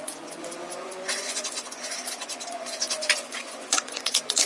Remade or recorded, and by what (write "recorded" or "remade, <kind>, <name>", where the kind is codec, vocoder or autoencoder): remade, vocoder, Vocos